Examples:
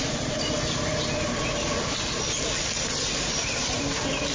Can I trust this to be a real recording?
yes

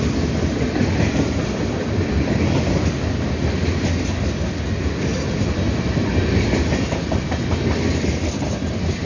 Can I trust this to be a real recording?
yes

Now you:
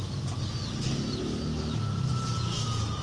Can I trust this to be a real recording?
yes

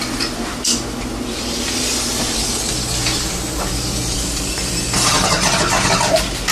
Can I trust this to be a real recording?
yes